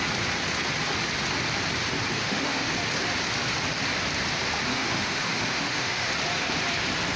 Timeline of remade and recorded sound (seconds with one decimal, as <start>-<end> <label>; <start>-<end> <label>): 0.0-2.1 recorded; 2.1-2.7 remade; 2.7-4.7 recorded; 4.7-6.1 remade; 6.1-7.2 recorded